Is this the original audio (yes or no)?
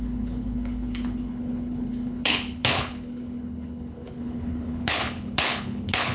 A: no